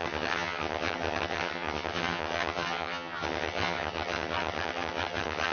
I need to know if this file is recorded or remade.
remade